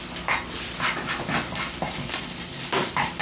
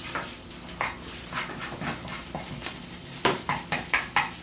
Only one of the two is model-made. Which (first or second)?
second